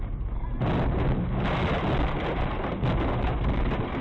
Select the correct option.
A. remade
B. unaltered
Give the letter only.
B